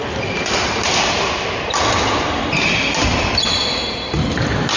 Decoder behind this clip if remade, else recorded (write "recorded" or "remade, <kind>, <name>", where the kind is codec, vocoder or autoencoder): recorded